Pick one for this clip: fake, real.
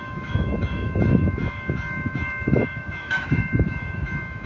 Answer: fake